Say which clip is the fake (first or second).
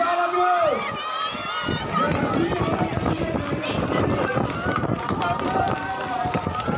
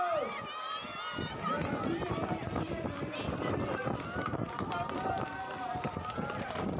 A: first